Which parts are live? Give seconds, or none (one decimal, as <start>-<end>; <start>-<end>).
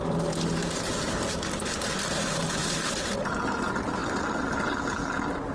0.0-0.6; 2.9-5.5